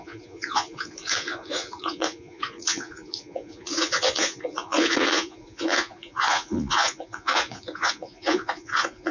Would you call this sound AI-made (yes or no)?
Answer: yes